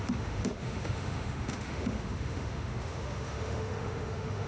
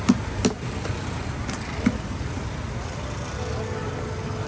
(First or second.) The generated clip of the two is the first